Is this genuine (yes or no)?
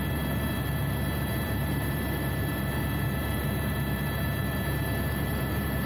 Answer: no